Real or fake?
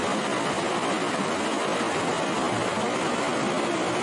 real